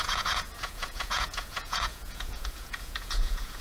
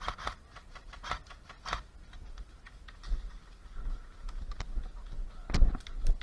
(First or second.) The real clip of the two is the second